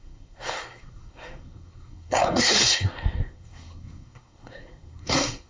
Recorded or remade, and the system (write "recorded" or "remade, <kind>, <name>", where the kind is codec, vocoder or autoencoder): remade, codec, SNAC